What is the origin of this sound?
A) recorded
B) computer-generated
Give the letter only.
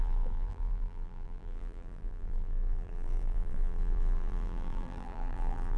B